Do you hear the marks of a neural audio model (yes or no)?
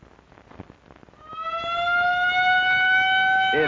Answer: no